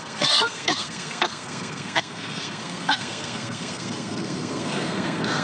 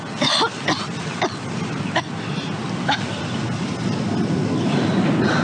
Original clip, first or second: second